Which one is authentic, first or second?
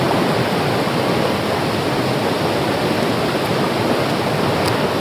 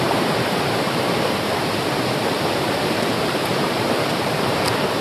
first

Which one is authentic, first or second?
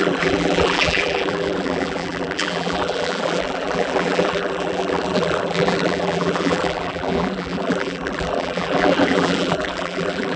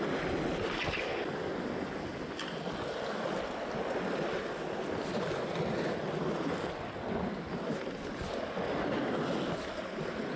second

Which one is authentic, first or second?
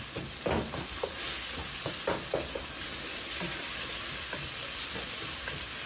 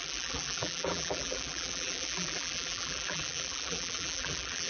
first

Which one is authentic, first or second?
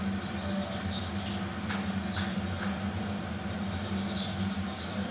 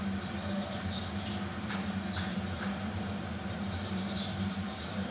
first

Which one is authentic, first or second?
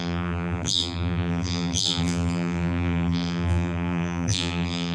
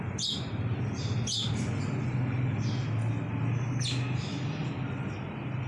second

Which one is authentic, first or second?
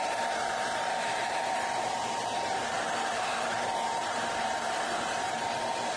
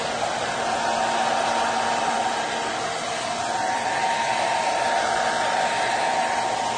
second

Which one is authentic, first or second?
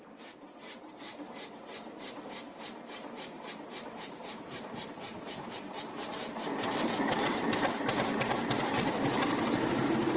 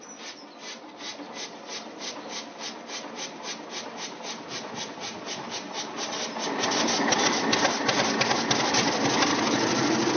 second